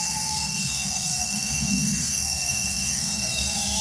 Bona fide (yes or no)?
no